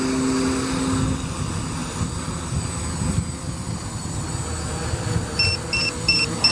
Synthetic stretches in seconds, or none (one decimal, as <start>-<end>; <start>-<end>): none